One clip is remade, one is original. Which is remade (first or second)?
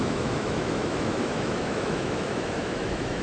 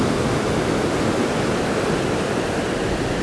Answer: first